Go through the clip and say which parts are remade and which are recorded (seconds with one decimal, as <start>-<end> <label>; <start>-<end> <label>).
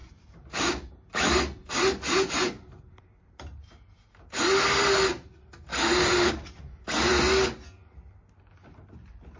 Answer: 0.0-0.9 remade; 0.9-5.7 recorded; 5.7-6.3 remade; 6.3-9.4 recorded